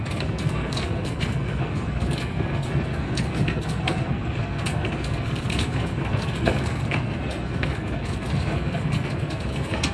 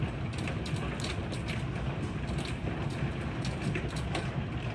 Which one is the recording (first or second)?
second